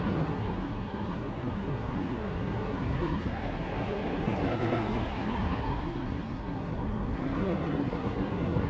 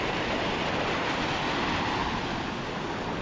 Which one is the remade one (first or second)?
first